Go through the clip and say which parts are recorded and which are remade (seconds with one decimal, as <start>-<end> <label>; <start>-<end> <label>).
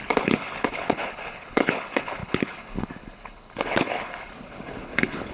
0.0-5.3 remade